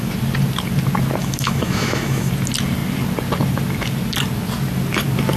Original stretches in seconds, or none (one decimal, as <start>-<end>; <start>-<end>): 0.0-1.2; 2.3-5.4